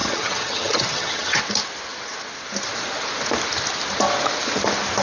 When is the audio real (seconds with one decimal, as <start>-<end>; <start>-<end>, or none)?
1.4-5.0